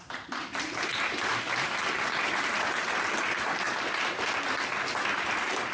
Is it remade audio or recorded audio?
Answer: recorded